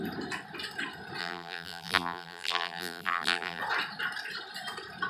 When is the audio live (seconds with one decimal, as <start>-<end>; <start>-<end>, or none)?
0.0-1.2; 3.6-5.1